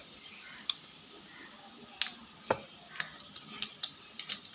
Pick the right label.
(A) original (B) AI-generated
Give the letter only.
A